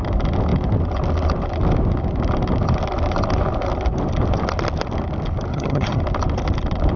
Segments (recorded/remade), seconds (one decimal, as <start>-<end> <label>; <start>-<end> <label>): 0.0-5.5 recorded; 5.5-6.0 remade; 6.0-7.0 recorded